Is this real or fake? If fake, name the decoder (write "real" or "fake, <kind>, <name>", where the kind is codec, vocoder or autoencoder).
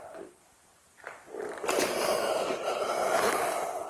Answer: fake, vocoder, BigVGAN v2